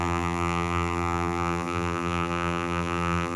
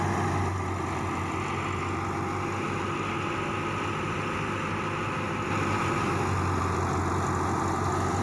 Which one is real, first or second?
second